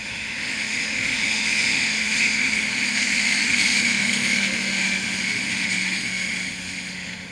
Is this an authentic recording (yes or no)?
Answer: no